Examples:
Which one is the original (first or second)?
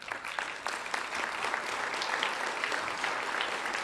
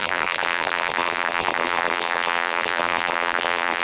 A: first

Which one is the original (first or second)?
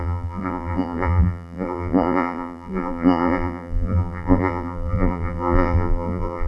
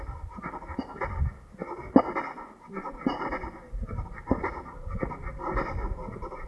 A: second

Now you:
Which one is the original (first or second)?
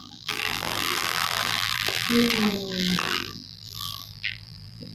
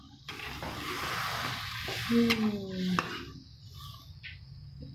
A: second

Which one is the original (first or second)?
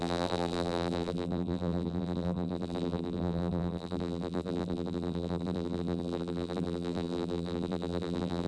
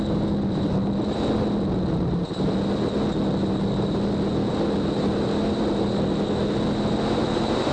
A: second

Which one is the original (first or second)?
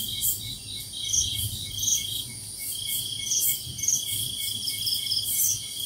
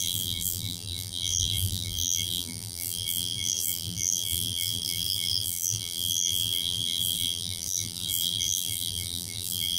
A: first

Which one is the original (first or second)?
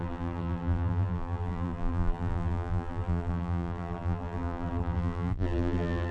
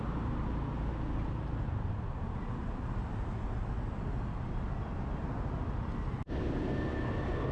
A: second